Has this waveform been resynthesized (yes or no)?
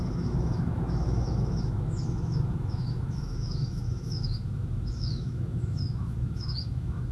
yes